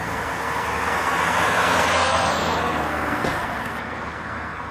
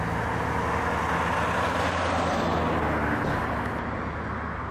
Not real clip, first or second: first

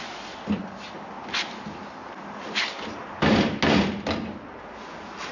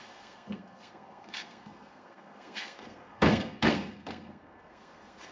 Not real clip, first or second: second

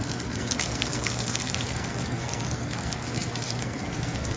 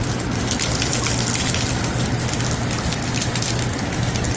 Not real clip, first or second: first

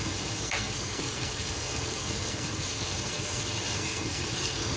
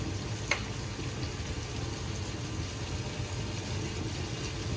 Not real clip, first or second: first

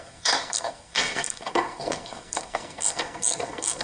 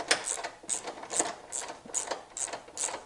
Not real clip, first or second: first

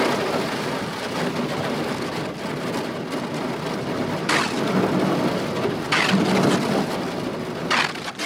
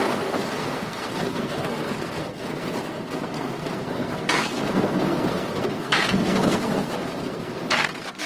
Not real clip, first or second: second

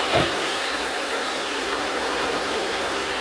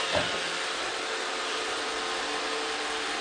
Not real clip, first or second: first